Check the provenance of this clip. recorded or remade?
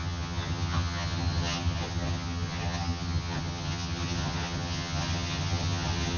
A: remade